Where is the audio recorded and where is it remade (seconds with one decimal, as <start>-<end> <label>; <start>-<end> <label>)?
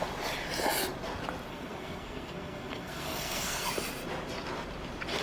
0.0-1.5 recorded; 1.5-3.7 remade; 3.7-5.2 recorded